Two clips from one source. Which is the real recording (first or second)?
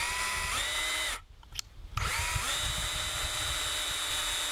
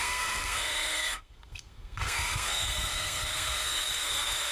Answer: first